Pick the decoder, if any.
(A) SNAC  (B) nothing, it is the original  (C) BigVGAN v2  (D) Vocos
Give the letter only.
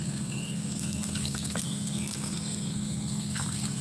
A